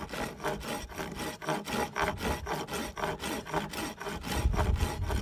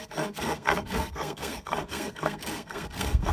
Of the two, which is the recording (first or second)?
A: first